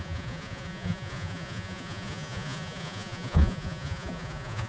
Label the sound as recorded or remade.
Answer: remade